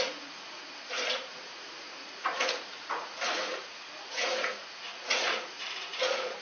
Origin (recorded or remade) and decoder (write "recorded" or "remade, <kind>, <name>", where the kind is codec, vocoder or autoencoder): remade, vocoder, Vocos